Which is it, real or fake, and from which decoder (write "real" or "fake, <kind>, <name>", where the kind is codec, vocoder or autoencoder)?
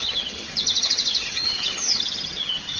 fake, vocoder, HiFi-GAN